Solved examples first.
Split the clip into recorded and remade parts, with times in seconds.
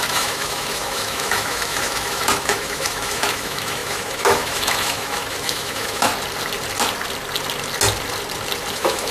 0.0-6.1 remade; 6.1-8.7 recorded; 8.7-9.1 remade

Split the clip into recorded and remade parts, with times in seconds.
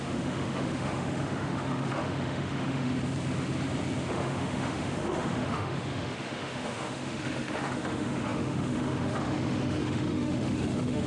0.0-2.9 remade; 2.9-4.1 recorded; 4.1-11.1 remade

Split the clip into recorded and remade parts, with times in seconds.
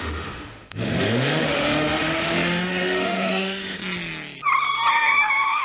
0.0-3.8 remade; 3.8-4.9 recorded; 4.9-5.6 remade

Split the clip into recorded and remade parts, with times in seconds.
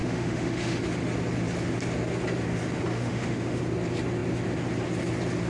0.0-0.8 remade; 0.8-2.9 recorded; 2.9-3.6 remade; 3.6-5.5 recorded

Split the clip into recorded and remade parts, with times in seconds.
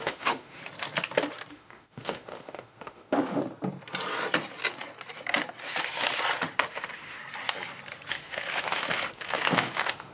0.0-0.6 remade; 0.6-1.5 recorded; 1.5-3.4 remade; 3.4-6.7 recorded; 6.7-7.2 remade; 7.2-8.1 recorded; 8.1-10.1 remade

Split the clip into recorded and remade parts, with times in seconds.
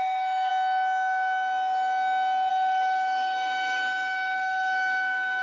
0.0-0.5 remade; 0.5-2.5 recorded; 2.5-5.4 remade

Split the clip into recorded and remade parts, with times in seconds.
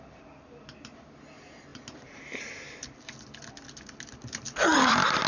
0.0-5.3 recorded